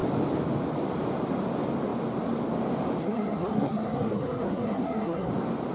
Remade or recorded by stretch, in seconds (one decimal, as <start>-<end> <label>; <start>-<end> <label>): 0.0-3.0 recorded; 3.0-5.3 remade; 5.3-5.7 recorded

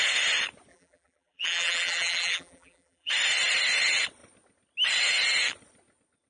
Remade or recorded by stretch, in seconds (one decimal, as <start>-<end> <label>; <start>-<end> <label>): 0.0-0.7 recorded; 0.7-3.1 remade; 3.1-6.3 recorded

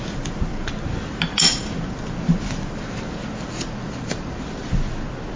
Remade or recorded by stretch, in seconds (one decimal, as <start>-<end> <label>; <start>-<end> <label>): 0.0-5.4 recorded

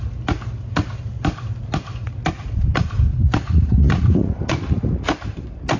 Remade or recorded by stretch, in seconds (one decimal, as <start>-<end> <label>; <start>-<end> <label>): 0.0-3.2 recorded; 3.2-4.6 remade; 4.6-5.8 recorded

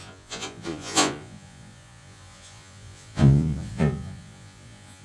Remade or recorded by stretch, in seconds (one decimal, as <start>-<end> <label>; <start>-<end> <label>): 0.0-5.0 remade

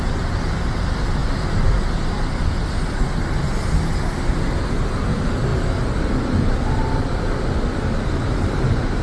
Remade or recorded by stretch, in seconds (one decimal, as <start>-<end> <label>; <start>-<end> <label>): 0.0-9.0 recorded

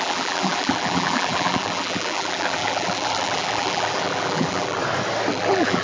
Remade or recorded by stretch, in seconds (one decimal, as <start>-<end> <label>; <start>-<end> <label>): 0.0-4.8 remade; 4.8-5.3 recorded; 5.3-5.8 remade